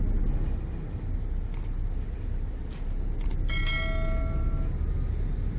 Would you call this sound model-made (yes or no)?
no